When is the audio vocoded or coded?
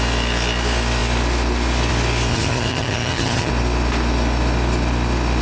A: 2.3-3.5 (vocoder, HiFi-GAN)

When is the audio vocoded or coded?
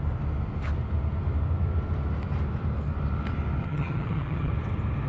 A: 3.6-4.5 (vocoder, HiFi-GAN)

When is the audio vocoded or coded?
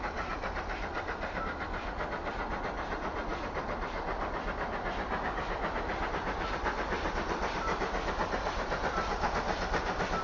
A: none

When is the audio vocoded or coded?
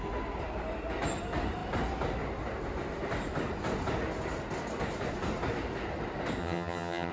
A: 6.4-7.1 (vocoder, HiFi-GAN)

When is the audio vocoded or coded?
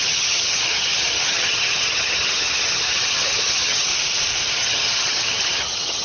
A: 0.0-3.9 (vocoder, HiFi-GAN); 4.5-6.0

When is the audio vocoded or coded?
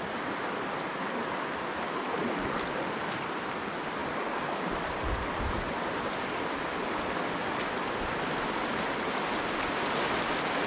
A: none